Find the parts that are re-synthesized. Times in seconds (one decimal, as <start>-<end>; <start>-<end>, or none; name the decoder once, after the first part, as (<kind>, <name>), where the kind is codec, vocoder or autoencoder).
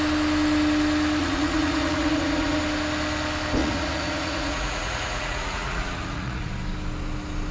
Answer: 1.2-2.6 (vocoder, Vocos); 3.6-6.5